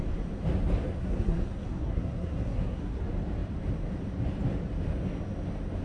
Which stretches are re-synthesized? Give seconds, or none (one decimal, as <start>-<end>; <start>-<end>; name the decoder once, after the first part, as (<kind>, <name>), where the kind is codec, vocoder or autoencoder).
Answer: 0.9-3.0 (codec, SNAC)